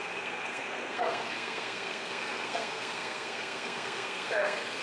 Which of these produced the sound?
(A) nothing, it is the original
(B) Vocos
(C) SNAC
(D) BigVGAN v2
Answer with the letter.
C